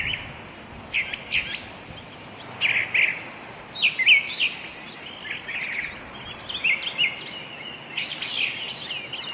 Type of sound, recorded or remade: recorded